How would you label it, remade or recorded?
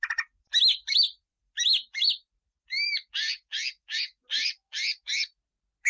recorded